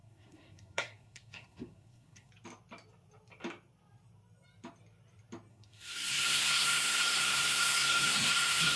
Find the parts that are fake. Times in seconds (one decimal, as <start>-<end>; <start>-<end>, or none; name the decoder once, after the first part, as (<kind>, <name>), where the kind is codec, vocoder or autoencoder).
0.0-2.3 (codec, SNAC); 5.5-8.8